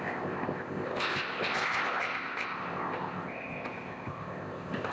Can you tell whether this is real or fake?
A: fake